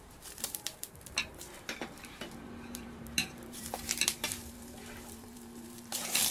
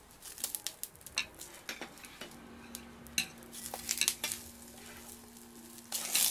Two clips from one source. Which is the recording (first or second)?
second